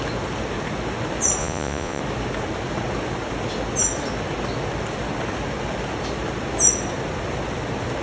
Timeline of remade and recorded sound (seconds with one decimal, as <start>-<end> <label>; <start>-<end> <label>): 0.0-1.4 recorded; 1.4-2.0 remade; 2.0-8.0 recorded